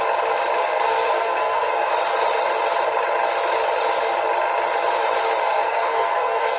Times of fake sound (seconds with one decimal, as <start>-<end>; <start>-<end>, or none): 0.6-1.9; 5.4-6.6